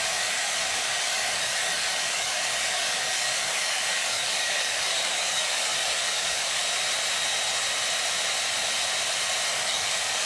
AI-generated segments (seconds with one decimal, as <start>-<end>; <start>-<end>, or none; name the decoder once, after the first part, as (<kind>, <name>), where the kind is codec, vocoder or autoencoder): 0.0-6.6 (codec, DAC); 9.5-10.3